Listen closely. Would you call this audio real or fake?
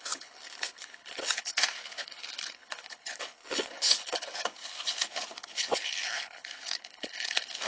fake